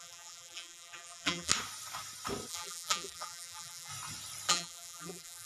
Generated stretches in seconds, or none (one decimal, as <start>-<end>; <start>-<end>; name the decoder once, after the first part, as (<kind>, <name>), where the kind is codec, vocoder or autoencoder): 0.0-1.5 (vocoder, BigVGAN v2); 2.5-3.9; 4.5-5.5